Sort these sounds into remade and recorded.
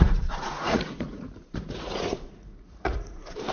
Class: remade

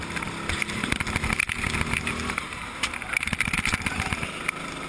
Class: recorded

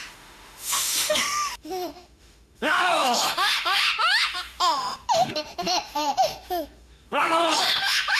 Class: remade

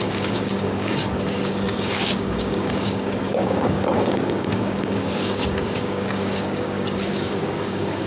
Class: remade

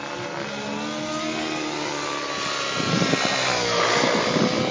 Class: recorded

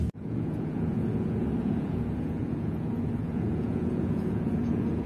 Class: remade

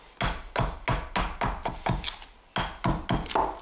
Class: recorded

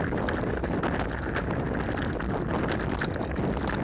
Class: recorded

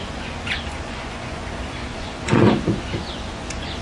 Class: remade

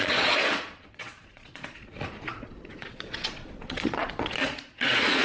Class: remade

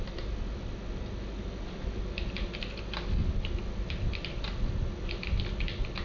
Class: recorded